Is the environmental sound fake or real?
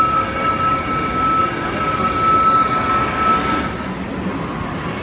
real